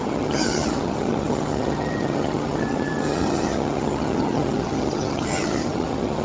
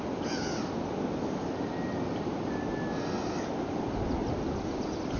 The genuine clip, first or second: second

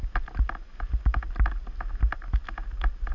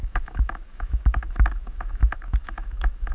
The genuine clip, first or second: first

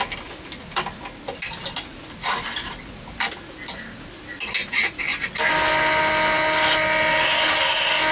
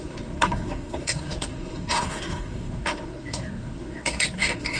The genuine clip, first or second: first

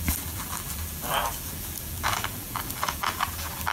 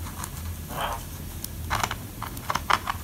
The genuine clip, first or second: second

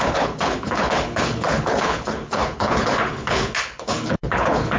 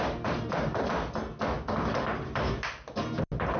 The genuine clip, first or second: second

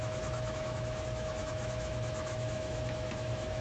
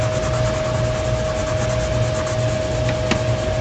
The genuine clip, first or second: second